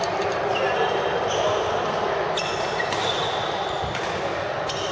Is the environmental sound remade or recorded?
recorded